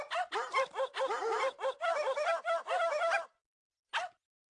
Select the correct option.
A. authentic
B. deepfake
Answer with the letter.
A